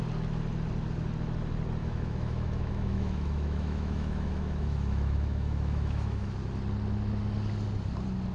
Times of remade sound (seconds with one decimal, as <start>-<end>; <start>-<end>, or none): 1.8-6.3